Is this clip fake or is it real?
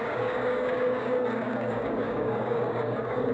fake